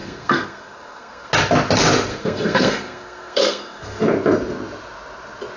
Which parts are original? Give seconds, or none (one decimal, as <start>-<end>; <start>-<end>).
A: 1.3-2.1; 4.0-5.6